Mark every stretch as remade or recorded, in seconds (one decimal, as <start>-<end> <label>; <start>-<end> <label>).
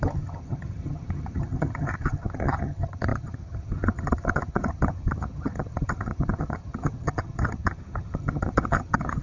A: 0.0-9.2 remade